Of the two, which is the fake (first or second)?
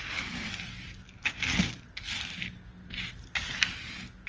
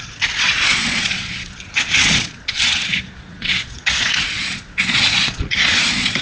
second